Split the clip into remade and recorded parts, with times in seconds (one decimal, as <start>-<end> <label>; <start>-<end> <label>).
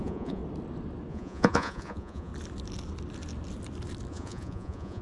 0.0-0.4 remade; 0.4-1.1 recorded; 1.1-2.3 remade; 2.3-4.1 recorded; 4.1-5.0 remade